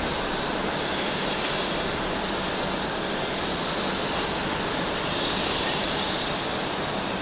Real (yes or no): yes